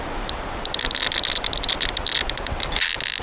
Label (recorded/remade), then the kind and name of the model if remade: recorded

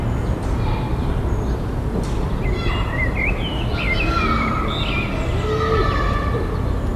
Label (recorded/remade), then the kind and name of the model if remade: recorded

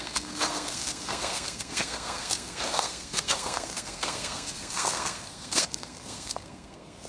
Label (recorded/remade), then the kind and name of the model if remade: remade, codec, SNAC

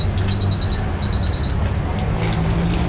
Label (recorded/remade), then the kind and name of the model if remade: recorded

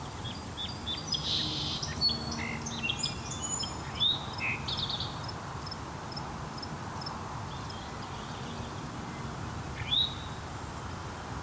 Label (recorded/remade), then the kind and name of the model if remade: recorded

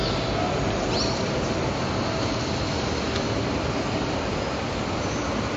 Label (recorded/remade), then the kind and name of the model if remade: recorded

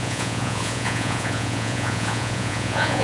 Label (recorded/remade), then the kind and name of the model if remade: remade, vocoder, Vocos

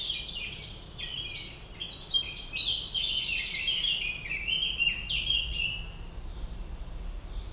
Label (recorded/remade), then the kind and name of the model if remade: recorded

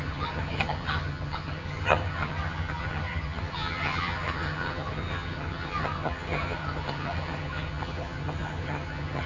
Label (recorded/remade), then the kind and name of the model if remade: remade, vocoder, HiFi-GAN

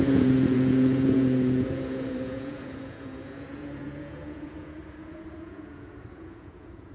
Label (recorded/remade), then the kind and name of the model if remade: remade, vocoder, Vocos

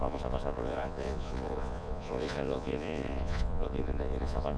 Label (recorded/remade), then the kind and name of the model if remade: remade, vocoder, Vocos